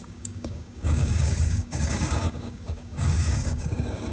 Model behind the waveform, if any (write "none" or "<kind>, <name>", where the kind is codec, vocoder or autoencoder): codec, DAC